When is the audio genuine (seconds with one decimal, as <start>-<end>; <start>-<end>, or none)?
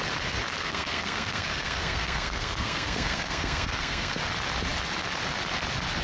0.0-0.6; 4.2-6.0